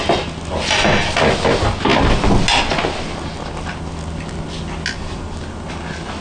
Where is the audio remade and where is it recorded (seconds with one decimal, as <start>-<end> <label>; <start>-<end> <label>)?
0.0-6.2 recorded

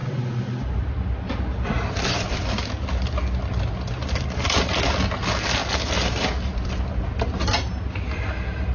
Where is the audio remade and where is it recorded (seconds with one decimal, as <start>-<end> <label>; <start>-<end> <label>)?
0.0-8.7 recorded

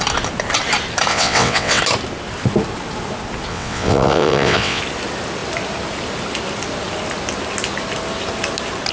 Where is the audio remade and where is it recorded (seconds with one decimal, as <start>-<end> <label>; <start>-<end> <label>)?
0.0-1.1 recorded; 1.1-1.8 remade; 1.8-3.5 recorded; 3.5-4.8 remade; 4.8-8.9 recorded

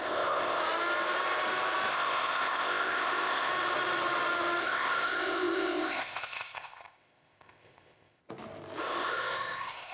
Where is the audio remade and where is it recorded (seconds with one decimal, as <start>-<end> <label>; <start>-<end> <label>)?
0.0-0.6 remade; 0.6-1.9 recorded; 1.9-3.5 remade; 3.5-4.6 recorded; 4.6-8.2 remade; 8.2-8.8 recorded; 8.8-9.9 remade

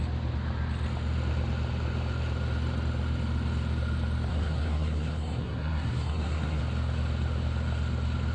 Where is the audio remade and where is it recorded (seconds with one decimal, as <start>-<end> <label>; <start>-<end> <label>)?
0.0-4.3 recorded; 4.3-6.6 remade; 6.6-8.3 recorded

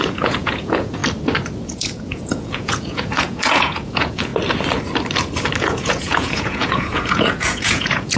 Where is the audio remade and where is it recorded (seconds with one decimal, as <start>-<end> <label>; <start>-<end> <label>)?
0.0-1.0 remade; 1.0-1.7 recorded; 1.7-4.3 remade; 4.3-5.6 recorded; 5.6-8.2 remade

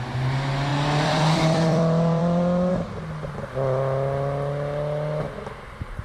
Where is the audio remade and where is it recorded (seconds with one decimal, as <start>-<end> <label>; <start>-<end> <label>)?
0.0-0.7 recorded; 0.7-2.7 remade; 2.7-6.0 recorded